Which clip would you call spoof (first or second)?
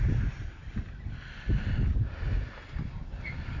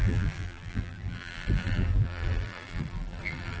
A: second